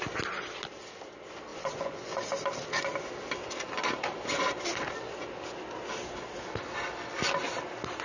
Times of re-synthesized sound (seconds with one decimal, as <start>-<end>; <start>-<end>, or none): 1.5-2.2